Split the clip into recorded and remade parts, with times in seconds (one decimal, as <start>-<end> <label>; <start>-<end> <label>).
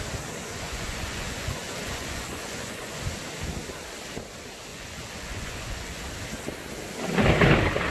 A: 0.0-0.4 recorded; 0.4-3.0 remade; 3.0-4.7 recorded; 4.7-6.0 remade; 6.0-7.9 recorded